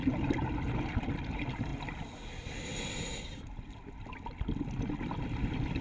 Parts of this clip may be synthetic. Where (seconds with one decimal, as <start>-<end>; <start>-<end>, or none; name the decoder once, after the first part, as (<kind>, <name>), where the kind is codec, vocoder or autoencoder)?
none